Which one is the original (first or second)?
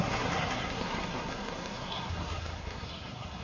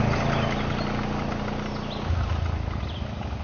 second